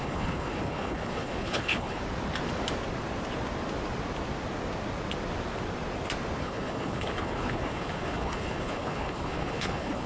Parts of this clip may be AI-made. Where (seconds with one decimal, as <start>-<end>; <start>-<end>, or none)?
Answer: 0.0-2.0; 6.4-10.1